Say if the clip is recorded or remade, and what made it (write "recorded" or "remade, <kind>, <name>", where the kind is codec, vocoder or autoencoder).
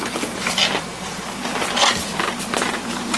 recorded